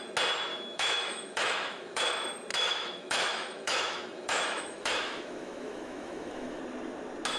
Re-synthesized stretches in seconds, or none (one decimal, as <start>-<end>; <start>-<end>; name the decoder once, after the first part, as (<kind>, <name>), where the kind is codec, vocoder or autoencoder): 0.5-2.1 (autoencoder, DAC-VAE); 2.5-6.6